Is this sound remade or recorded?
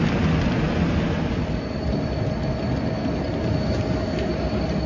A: recorded